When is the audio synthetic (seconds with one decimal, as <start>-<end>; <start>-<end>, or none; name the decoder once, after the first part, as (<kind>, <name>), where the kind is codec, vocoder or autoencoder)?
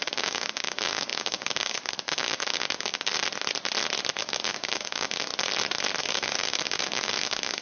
0.0-3.1 (codec, DAC); 4.2-5.3; 6.0-7.6